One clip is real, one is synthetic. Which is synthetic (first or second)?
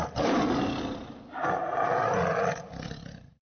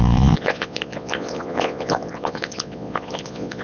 second